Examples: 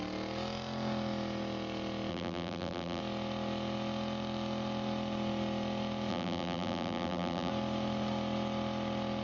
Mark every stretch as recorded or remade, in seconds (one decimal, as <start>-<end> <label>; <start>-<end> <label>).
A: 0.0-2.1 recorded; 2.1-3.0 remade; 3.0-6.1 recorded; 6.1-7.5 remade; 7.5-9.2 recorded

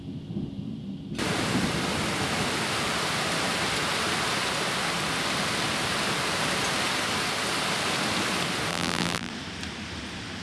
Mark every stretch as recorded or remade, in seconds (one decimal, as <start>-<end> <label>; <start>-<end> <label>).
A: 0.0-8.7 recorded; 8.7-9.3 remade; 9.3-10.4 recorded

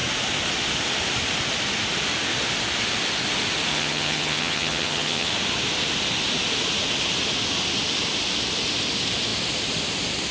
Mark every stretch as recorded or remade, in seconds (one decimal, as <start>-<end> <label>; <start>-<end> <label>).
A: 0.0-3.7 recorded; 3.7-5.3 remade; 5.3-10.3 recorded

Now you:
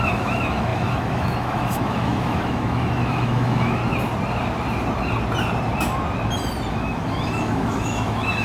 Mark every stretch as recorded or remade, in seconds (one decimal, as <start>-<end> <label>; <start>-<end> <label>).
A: 0.0-3.8 remade; 3.8-6.7 recorded; 6.7-8.4 remade

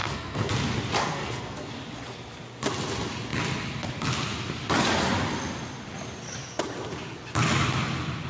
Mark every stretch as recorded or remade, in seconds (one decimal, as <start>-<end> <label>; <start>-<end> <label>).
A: 0.0-0.5 remade; 0.5-1.0 recorded; 1.0-1.7 remade; 1.7-8.3 recorded